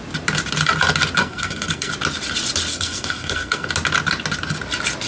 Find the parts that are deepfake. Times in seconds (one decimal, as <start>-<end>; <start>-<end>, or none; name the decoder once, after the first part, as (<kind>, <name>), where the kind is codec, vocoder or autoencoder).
1.2-1.9 (codec, SNAC); 2.7-3.7